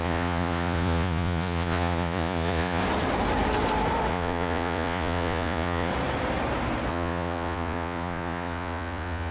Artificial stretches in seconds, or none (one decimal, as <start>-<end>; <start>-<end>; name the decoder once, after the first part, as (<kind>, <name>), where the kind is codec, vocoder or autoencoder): 0.0-2.8 (vocoder, Vocos); 4.1-5.9; 6.9-9.3